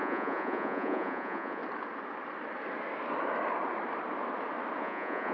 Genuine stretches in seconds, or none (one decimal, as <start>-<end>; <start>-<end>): 1.6-4.8